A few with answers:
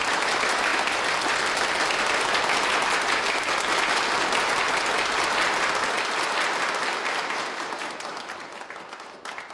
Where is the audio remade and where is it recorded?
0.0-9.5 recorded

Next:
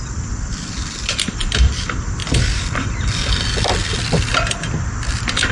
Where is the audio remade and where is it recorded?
0.0-5.5 remade

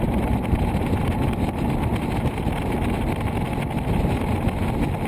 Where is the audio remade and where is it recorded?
0.0-1.9 remade; 1.9-5.1 recorded

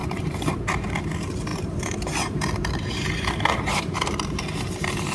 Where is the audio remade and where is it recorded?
0.0-0.7 remade; 0.7-1.5 recorded; 1.5-4.4 remade; 4.4-5.1 recorded

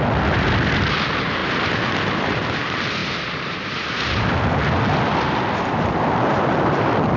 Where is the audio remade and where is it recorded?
0.0-1.4 recorded; 1.4-2.6 remade; 2.6-3.0 recorded; 3.0-4.3 remade; 4.3-7.2 recorded

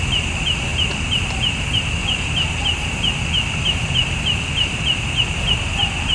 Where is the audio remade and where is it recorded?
0.0-2.0 recorded; 2.0-2.5 remade; 2.5-6.1 recorded

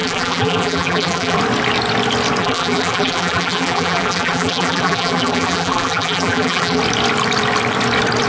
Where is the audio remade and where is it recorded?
0.0-1.4 remade; 1.4-2.4 recorded; 2.4-6.8 remade; 6.8-8.3 recorded

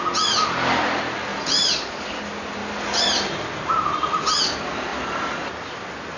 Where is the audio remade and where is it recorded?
0.0-1.3 recorded; 1.3-2.2 remade; 2.2-6.2 recorded